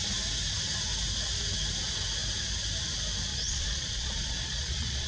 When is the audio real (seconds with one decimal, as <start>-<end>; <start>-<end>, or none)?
0.0-3.3